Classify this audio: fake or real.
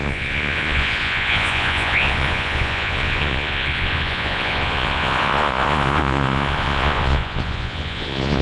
fake